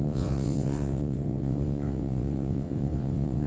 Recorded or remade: remade